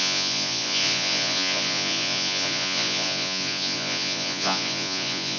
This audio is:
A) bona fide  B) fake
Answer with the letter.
B